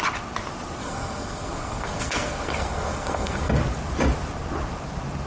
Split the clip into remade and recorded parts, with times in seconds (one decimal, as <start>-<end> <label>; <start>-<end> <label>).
0.0-0.8 recorded; 0.8-3.5 remade; 3.5-5.3 recorded